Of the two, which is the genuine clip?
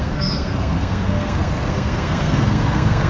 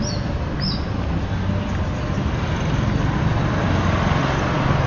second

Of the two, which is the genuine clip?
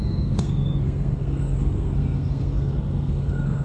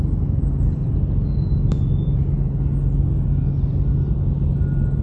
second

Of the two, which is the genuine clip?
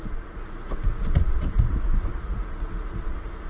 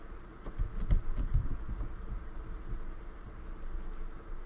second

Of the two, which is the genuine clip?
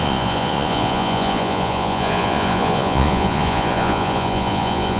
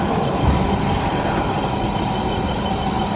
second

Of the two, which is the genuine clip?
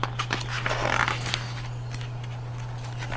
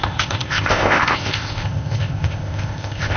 first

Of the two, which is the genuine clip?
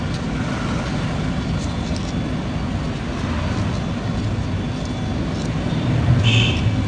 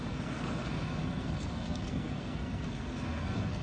first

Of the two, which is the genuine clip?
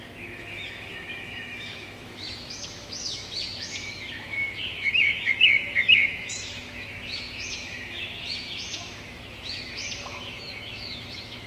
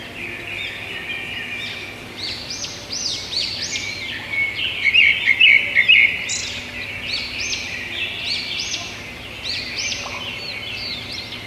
second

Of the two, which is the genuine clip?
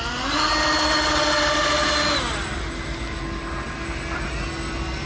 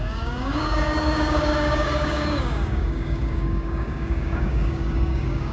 first